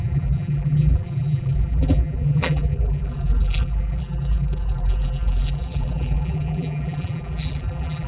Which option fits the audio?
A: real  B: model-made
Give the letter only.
B